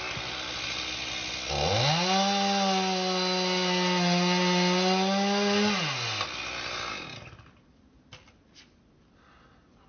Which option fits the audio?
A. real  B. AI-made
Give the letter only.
A